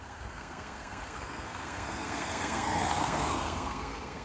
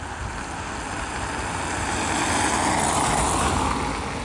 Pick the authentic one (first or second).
second